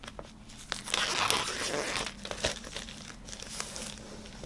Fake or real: real